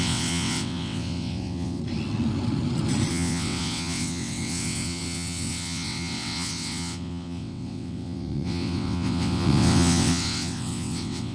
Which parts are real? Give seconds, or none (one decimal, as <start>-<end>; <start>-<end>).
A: 1.8-3.1